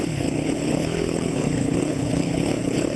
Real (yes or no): no